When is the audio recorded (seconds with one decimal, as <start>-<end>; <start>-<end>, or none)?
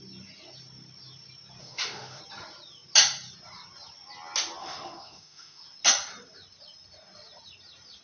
0.0-1.6; 2.2-4.6; 5.6-8.0